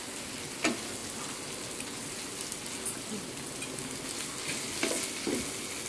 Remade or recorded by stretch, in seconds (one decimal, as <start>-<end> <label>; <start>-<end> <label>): 0.0-5.9 recorded